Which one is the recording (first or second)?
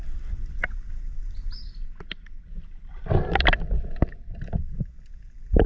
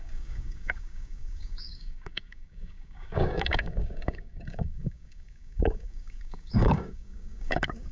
first